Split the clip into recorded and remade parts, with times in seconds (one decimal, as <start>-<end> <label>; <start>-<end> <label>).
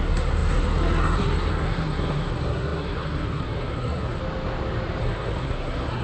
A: 0.0-4.2 remade; 4.2-5.0 recorded; 5.0-6.0 remade